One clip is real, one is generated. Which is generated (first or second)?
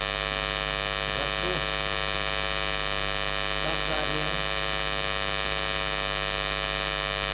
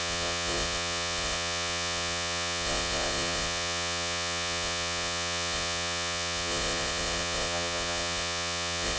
second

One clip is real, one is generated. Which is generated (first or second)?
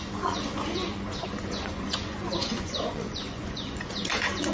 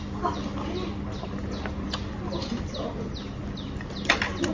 first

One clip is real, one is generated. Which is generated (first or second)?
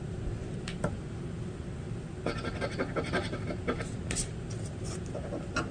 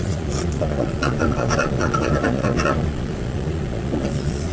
second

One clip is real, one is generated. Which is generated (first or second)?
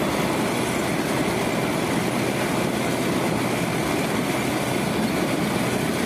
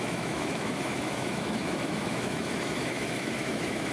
second